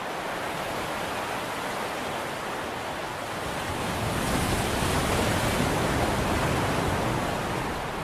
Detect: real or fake real